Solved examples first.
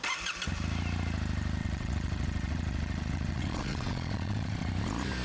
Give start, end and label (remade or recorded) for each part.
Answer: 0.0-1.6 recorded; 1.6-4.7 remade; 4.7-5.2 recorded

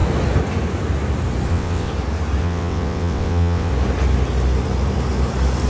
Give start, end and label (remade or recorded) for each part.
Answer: 0.0-1.5 recorded; 1.5-1.9 remade; 1.9-2.4 recorded; 2.4-3.7 remade; 3.7-5.7 recorded

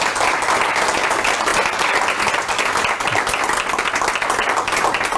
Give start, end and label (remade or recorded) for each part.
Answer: 0.0-5.2 recorded